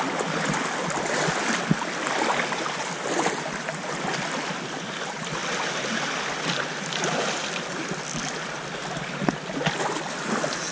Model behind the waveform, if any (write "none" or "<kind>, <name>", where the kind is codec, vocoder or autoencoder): none